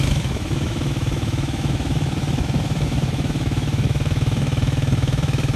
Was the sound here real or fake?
fake